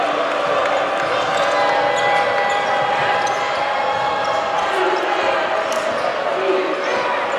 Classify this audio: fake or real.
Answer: real